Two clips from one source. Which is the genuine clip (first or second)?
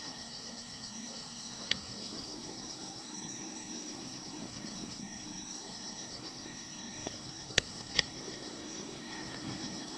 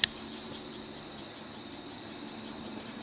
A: second